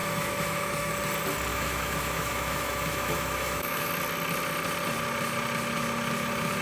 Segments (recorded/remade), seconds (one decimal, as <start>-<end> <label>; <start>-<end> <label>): 0.0-0.9 remade; 0.9-1.5 recorded; 1.5-3.9 remade; 3.9-6.6 recorded